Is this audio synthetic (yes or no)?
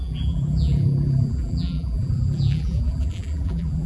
yes